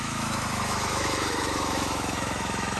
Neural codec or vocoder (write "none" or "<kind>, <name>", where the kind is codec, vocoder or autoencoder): autoencoder, DAC-VAE